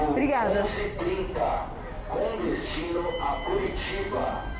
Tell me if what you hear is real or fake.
fake